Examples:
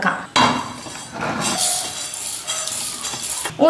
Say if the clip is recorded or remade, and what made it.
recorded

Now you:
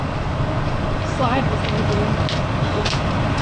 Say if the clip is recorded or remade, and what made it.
recorded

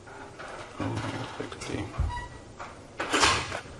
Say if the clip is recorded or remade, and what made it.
recorded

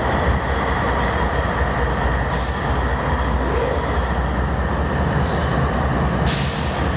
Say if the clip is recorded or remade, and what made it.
recorded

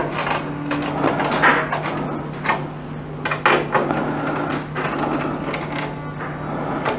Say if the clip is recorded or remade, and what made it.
recorded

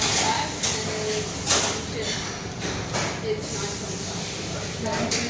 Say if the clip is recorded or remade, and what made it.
recorded